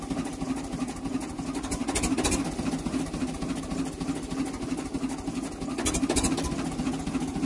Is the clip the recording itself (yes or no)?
yes